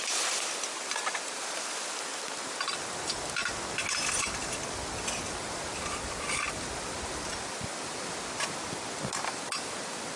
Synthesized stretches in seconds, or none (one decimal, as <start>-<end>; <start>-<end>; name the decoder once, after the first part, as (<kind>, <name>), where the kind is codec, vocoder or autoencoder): none